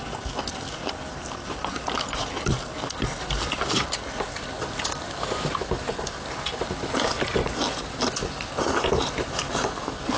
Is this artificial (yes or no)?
no